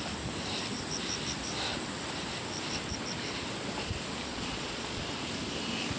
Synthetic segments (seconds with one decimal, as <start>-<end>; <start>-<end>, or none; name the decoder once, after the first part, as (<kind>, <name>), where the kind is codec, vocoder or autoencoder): 4.3-5.0 (vocoder, Vocos)